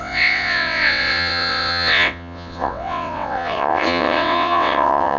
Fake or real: fake